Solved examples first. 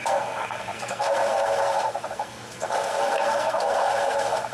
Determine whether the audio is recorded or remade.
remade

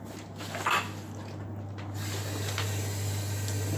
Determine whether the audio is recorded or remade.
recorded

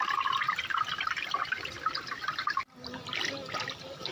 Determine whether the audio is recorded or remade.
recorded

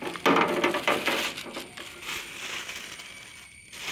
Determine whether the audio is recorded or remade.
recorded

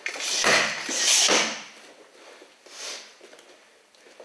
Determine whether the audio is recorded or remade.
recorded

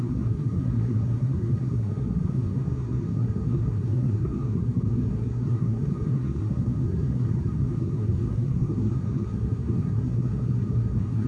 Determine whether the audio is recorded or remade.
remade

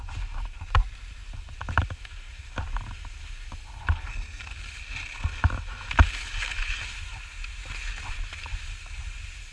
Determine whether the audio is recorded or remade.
recorded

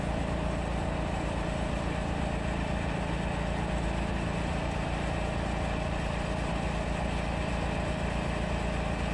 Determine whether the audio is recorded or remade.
recorded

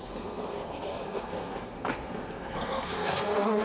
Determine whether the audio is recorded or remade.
remade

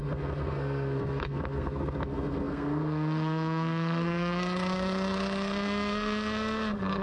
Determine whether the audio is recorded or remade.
remade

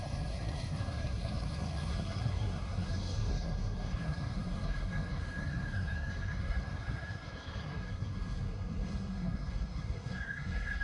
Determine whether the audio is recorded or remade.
remade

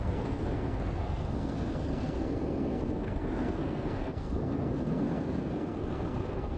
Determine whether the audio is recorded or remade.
remade